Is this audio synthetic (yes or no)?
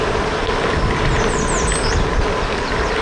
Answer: no